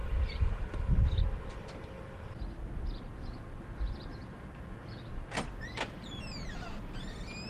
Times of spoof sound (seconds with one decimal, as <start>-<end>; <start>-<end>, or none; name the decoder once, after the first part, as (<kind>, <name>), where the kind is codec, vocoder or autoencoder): 0.0-0.6 (vocoder, BigVGAN v2)